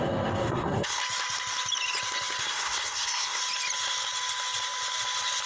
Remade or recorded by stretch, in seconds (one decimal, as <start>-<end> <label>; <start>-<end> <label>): 0.0-1.0 remade; 1.0-2.4 recorded; 2.4-3.4 remade; 3.4-5.5 recorded